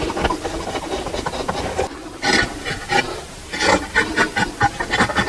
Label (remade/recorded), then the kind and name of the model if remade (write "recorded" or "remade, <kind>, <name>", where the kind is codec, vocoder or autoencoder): recorded